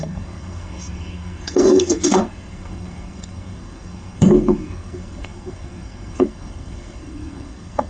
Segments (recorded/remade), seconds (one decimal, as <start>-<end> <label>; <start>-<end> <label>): 0.0-7.9 remade

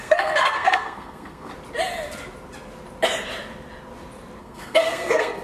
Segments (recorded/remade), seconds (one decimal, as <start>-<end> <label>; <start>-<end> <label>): 0.0-1.5 remade; 1.5-4.4 recorded; 4.4-5.4 remade

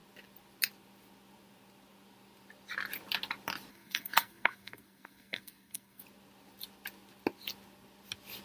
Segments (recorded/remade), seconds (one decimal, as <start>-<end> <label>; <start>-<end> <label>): 0.0-3.7 recorded; 3.7-6.0 remade; 6.0-8.4 recorded

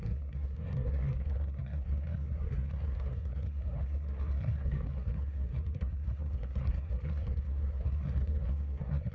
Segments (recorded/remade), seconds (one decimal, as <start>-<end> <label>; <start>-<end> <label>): 0.0-9.1 remade

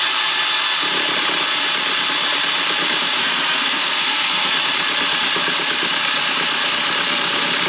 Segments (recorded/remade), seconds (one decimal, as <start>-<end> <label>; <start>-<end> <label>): 0.0-3.2 recorded; 3.2-4.5 remade; 4.5-7.7 recorded

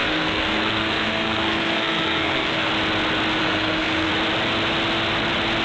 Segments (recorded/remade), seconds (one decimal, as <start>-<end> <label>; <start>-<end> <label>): 0.0-2.7 remade; 2.7-3.4 recorded; 3.4-4.1 remade; 4.1-5.6 recorded

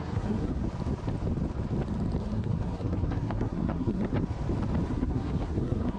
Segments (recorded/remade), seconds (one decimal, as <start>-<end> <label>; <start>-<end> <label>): 0.0-0.6 remade; 0.6-2.2 recorded; 2.2-4.1 remade; 4.1-4.9 recorded; 4.9-6.0 remade